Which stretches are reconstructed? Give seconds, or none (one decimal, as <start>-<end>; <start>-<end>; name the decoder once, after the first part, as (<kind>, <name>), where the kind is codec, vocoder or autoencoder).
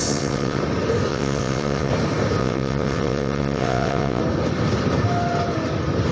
0.0-0.6 (vocoder, WaveNeXt); 1.1-1.9; 2.4-4.2